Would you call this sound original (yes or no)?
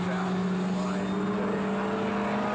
yes